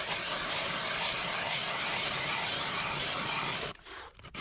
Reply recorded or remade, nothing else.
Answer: remade